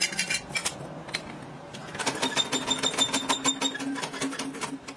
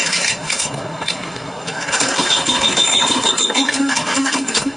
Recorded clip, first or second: first